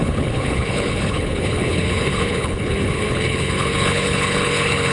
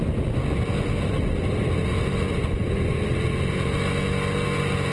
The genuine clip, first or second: second